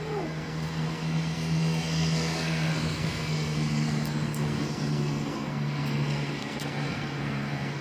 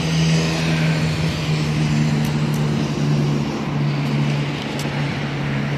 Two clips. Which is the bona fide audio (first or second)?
second